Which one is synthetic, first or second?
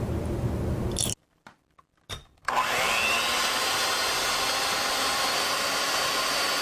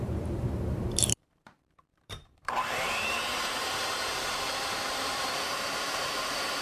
second